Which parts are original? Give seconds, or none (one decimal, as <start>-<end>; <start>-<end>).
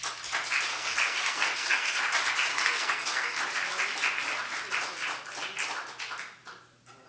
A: 0.0-0.7; 2.0-2.5; 3.4-7.1